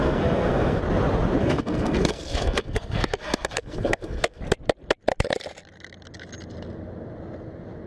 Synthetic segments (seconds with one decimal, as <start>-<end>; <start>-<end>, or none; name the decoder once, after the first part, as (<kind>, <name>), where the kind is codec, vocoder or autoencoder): 0.0-0.8 (codec, SNAC); 1.4-4.4